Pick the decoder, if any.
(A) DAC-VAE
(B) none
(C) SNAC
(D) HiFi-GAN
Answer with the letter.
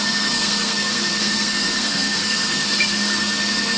C